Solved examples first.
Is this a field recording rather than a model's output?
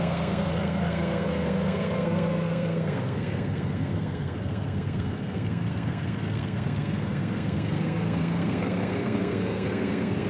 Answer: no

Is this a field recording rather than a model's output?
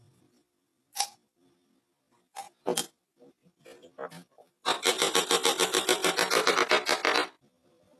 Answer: yes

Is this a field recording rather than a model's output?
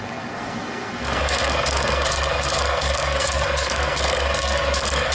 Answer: no